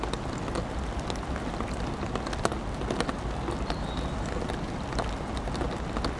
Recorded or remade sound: recorded